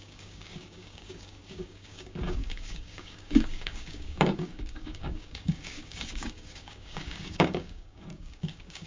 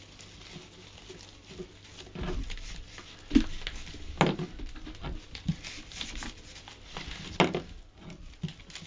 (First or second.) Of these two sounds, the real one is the second